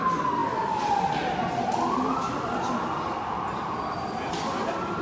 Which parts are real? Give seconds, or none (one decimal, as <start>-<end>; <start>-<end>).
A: 0.0-5.0